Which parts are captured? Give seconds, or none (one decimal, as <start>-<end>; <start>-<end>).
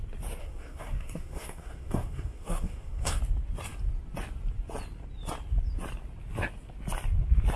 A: 0.0-0.4; 3.2-7.6